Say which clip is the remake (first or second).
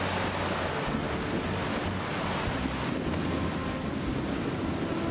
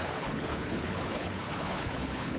second